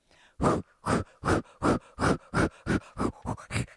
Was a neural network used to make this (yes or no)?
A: no